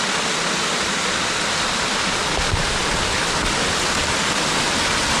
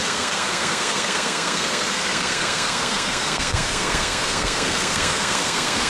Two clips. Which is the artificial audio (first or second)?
second